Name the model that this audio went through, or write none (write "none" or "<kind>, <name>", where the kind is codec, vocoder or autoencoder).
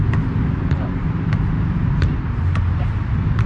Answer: none